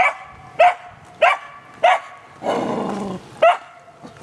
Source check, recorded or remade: recorded